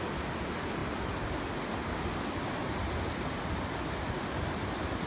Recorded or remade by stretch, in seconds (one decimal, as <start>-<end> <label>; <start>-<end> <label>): 0.0-5.1 recorded